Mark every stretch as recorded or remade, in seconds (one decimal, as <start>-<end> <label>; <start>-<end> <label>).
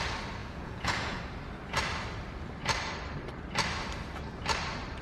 0.0-0.4 recorded; 0.4-1.2 remade; 1.2-5.0 recorded